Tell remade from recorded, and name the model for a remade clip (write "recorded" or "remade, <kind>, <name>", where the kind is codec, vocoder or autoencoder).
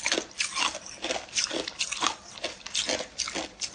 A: recorded